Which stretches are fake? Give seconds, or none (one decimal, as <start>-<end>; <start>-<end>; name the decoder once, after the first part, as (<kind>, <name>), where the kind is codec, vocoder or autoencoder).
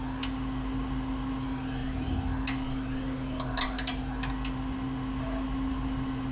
none